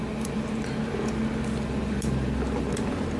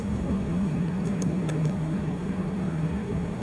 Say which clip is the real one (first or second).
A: first